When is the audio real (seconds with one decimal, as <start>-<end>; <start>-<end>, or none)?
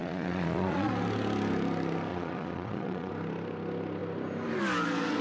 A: 0.9-2.1; 3.1-5.2